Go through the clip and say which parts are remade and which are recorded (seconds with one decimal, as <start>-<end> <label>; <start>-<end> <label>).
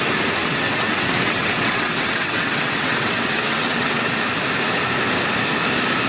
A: 0.0-0.4 recorded; 0.4-4.1 remade; 4.1-6.1 recorded